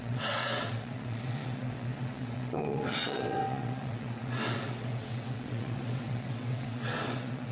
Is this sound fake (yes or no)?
yes